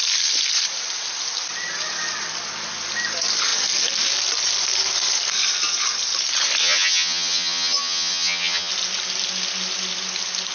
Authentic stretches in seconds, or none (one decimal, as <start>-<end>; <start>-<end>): 0.0-6.6; 8.7-10.5